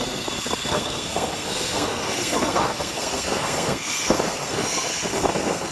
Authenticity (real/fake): fake